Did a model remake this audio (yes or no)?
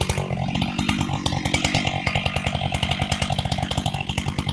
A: no